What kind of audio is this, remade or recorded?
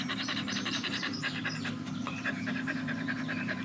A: remade